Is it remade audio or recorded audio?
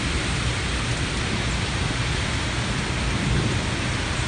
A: recorded